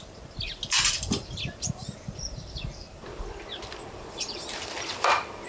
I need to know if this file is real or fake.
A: fake